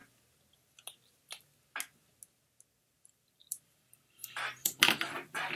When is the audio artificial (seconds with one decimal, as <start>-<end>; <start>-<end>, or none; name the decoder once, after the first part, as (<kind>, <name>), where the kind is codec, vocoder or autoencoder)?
2.7-5.6 (vocoder, BigVGAN v2)